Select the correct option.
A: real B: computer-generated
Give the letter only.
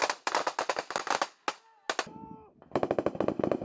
A